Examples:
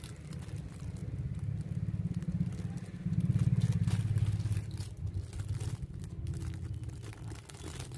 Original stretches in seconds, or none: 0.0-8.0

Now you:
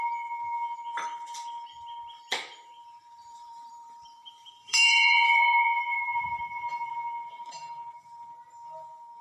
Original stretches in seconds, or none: 0.0-3.3; 6.9-9.2

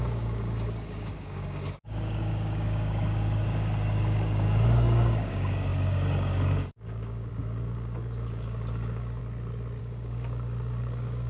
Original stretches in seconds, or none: 9.2-9.8

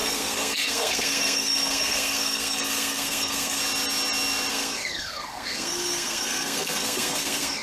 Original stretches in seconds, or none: 3.6-4.5

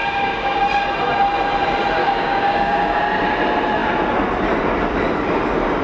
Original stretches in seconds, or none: 0.6-2.0; 3.0-5.8

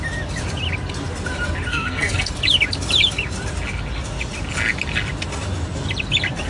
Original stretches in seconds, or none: 0.0-1.7; 2.3-6.5

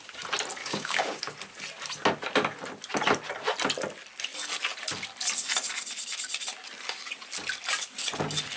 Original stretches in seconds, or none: 0.0-0.6; 1.2-8.6

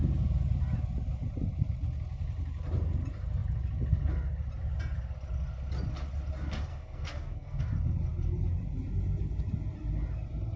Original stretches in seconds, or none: 0.0-6.7; 7.6-10.6